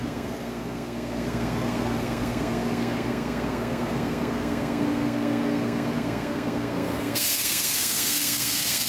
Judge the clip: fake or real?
fake